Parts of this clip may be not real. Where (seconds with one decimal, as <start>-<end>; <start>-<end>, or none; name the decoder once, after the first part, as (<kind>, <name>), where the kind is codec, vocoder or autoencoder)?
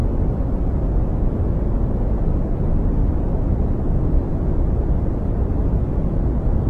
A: none